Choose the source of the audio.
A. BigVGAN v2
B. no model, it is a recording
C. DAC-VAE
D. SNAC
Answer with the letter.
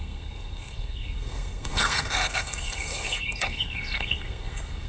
D